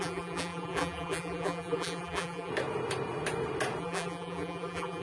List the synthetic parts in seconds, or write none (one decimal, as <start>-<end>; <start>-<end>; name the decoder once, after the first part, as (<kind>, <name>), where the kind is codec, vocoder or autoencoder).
0.0-2.5 (vocoder, BigVGAN v2); 3.8-5.0